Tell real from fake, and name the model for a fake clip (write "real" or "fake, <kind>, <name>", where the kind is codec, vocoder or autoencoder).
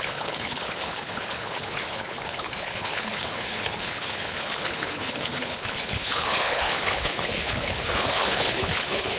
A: fake, codec, HILCodec